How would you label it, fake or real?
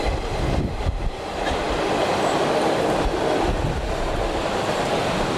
real